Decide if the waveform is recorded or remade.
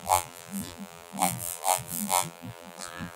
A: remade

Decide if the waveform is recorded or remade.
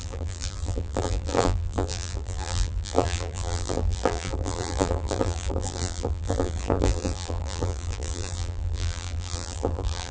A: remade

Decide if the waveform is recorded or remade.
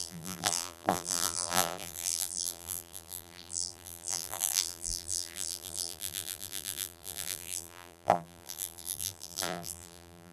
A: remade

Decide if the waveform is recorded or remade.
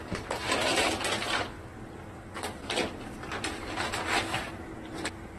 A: remade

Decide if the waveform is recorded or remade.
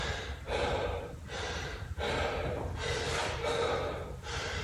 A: remade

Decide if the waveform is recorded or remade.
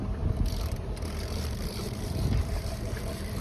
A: remade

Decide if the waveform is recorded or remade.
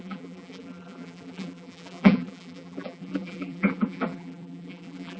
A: remade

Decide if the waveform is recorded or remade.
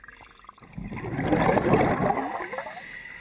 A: recorded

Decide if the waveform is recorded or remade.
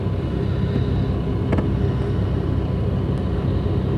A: recorded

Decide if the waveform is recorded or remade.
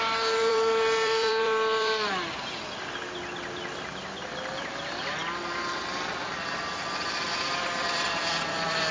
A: remade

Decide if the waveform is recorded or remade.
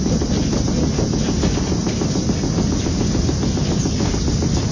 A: recorded